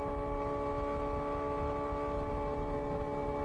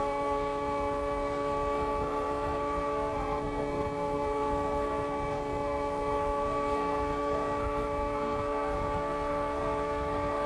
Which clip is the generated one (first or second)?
second